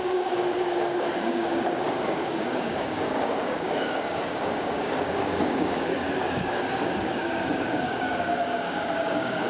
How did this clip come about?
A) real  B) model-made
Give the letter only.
B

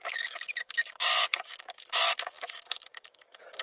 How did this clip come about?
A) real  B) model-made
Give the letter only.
B